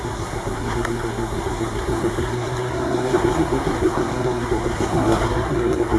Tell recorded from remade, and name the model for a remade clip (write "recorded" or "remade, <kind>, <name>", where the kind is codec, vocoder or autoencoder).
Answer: remade, codec, SNAC